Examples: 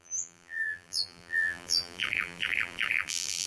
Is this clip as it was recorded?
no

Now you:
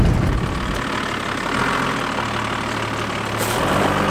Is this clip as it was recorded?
yes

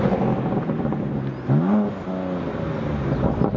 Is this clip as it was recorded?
yes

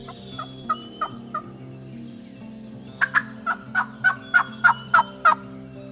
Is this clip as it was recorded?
yes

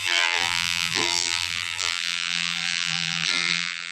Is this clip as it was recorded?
no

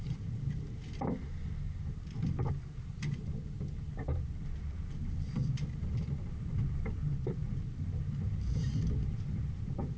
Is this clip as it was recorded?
no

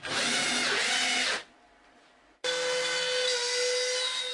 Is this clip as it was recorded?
yes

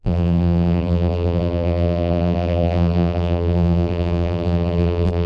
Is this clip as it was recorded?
no